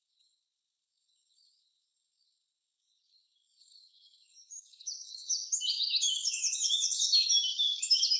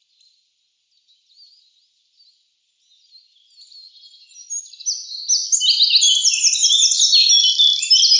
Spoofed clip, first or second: first